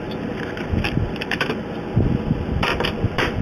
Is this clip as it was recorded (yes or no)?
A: no